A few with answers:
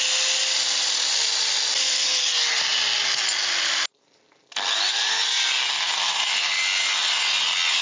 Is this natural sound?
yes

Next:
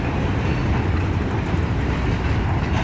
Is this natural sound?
yes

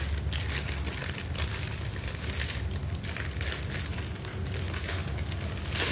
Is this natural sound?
yes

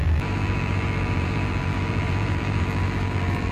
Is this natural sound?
no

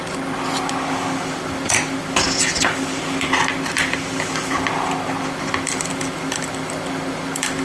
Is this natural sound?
no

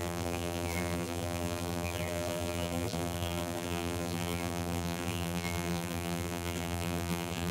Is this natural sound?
no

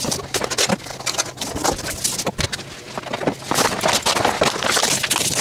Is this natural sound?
yes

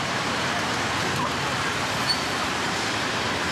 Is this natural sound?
no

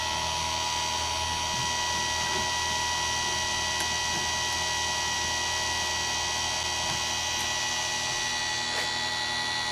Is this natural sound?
yes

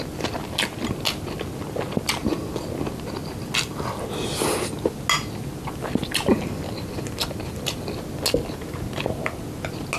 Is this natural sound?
yes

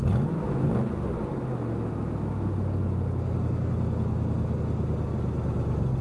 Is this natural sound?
yes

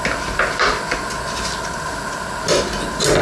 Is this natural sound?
yes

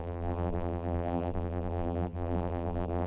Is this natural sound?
no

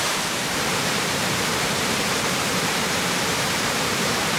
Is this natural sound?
no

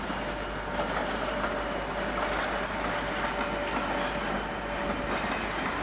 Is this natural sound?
yes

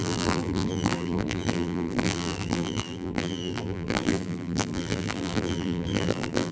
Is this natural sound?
no